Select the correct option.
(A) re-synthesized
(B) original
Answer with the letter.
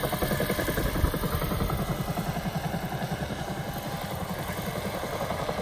B